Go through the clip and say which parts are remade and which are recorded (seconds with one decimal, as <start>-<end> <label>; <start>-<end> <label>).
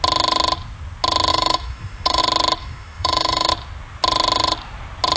0.0-1.3 recorded; 1.3-2.2 remade; 2.2-2.6 recorded; 2.6-3.5 remade; 3.5-5.2 recorded